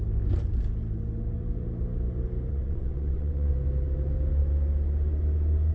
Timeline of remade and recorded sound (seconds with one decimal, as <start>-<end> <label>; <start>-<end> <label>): 0.0-2.5 recorded; 2.5-3.5 remade; 3.5-5.7 recorded

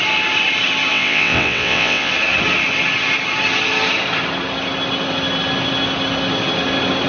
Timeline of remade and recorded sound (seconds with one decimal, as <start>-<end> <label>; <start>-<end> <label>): 0.0-0.9 recorded; 0.9-2.1 remade; 2.1-7.1 recorded

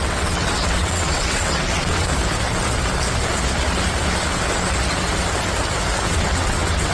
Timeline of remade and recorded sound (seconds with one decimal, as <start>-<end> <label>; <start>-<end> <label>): 0.0-2.1 remade; 2.1-6.1 recorded; 6.1-6.9 remade

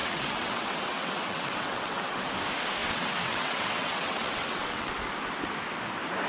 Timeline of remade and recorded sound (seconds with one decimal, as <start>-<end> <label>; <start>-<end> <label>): 0.0-2.3 remade; 2.3-2.8 recorded; 2.8-4.9 remade; 4.9-6.3 recorded

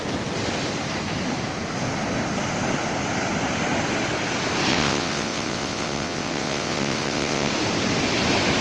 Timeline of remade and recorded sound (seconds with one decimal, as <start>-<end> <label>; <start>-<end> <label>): 0.0-4.7 recorded; 4.7-7.5 remade; 7.5-8.6 recorded